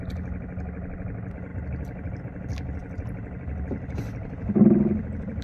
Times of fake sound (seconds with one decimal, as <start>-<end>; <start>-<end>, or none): none